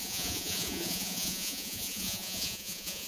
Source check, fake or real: fake